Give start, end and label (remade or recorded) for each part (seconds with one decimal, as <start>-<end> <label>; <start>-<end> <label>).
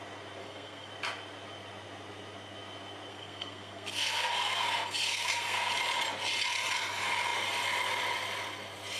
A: 0.0-0.4 recorded; 0.4-0.9 remade; 0.9-3.1 recorded; 3.1-5.7 remade; 5.7-9.0 recorded